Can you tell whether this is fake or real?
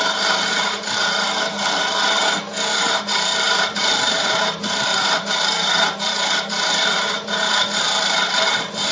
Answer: fake